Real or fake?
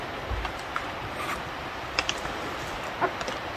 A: real